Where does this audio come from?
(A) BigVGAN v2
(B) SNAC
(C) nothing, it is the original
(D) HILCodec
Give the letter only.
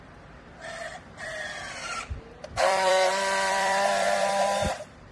A